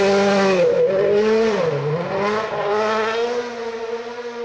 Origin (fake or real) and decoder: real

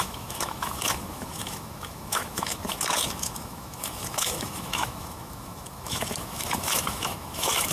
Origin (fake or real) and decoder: fake, autoencoder, DAC-VAE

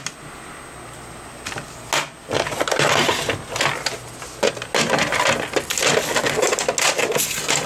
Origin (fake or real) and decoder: real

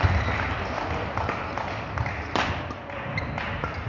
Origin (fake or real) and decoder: real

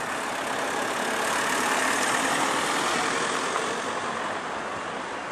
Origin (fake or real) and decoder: real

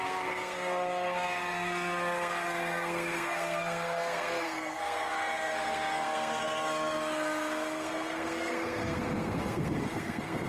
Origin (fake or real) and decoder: fake, codec, SNAC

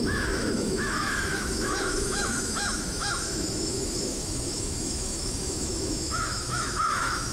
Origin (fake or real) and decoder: fake, autoencoder, DAC-VAE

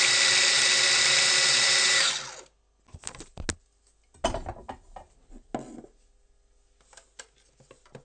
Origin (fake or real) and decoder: real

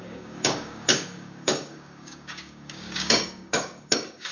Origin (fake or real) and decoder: fake, codec, DAC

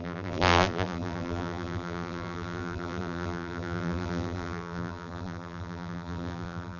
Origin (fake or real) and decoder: fake, vocoder, BigVGAN v2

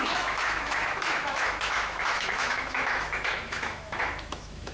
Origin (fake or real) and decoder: fake, autoencoder, DAC-VAE